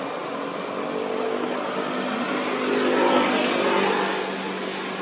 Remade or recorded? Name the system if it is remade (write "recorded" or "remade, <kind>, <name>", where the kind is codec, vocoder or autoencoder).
recorded